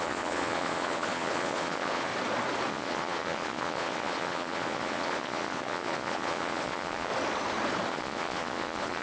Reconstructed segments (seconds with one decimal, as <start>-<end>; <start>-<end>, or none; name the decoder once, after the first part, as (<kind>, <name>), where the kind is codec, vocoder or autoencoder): 0.0-2.1 (vocoder, Vocos); 2.7-7.1; 7.9-9.0